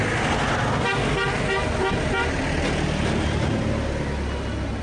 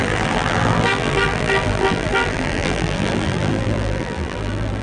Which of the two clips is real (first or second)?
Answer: first